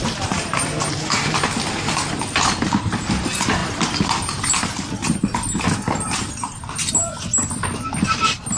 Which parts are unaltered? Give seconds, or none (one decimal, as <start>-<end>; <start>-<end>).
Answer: 0.0-8.6